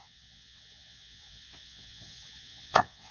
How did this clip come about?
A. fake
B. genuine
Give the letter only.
A